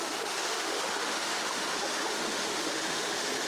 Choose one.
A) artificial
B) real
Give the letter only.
A